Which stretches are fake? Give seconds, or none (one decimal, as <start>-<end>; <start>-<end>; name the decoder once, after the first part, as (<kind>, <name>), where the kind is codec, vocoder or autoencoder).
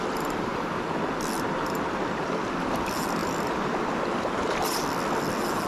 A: none